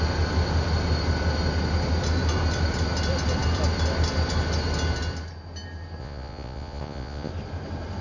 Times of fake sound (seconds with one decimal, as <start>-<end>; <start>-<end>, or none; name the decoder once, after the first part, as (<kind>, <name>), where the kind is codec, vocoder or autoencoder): 6.0-7.3 (vocoder, Vocos)